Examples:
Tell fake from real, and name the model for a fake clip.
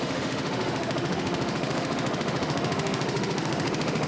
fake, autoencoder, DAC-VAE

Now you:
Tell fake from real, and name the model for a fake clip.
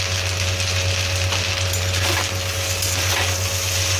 real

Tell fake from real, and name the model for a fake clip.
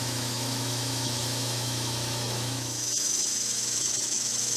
fake, autoencoder, DAC-VAE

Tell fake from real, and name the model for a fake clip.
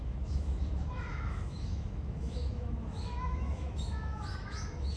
fake, autoencoder, DAC-VAE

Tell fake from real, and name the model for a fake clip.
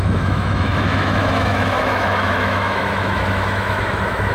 fake, autoencoder, DAC-VAE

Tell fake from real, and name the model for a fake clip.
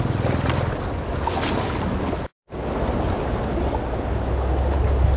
real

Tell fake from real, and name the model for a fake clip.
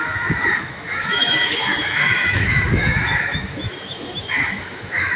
fake, autoencoder, DAC-VAE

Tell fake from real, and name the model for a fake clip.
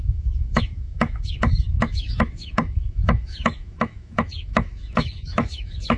fake, autoencoder, DAC-VAE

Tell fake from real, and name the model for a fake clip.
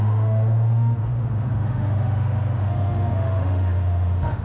fake, autoencoder, DAC-VAE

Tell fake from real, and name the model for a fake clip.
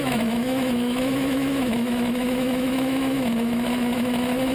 fake, autoencoder, DAC-VAE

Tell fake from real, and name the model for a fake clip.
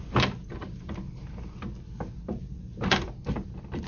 real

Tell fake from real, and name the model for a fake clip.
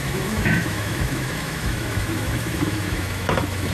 fake, autoencoder, DAC-VAE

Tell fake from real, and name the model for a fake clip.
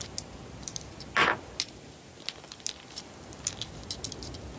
real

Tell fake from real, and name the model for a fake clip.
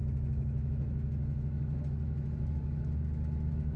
fake, autoencoder, DAC-VAE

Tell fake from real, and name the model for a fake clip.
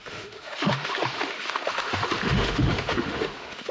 fake, autoencoder, DAC-VAE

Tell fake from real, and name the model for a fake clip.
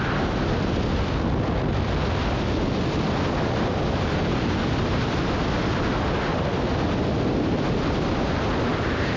real